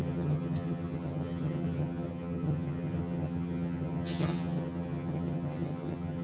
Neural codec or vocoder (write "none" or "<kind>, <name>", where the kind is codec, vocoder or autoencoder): vocoder, HiFi-GAN